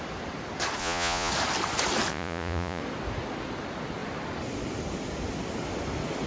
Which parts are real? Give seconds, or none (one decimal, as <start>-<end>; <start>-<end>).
0.0-0.8; 1.3-2.1; 2.8-6.3